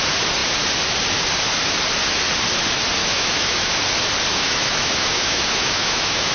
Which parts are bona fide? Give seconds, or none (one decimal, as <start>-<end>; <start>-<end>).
0.0-3.0; 3.7-4.3